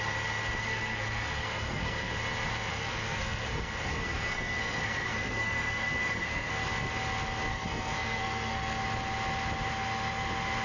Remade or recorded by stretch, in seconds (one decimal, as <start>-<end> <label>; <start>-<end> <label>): 0.0-0.6 recorded; 0.6-2.1 remade; 2.1-2.7 recorded; 2.7-6.5 remade; 6.5-7.5 recorded; 7.5-8.8 remade; 8.8-10.6 recorded